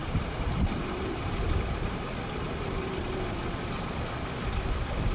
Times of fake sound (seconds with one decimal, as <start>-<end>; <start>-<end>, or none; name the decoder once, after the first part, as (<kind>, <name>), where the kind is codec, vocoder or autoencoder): 0.0-3.1 (vocoder, BigVGAN v2)